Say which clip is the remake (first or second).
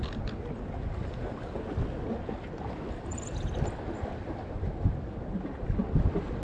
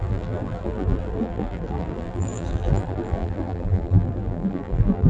second